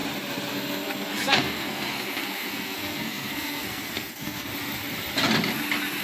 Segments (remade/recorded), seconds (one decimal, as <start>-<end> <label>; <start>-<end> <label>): 0.0-0.5 recorded; 0.5-4.5 remade; 4.5-6.0 recorded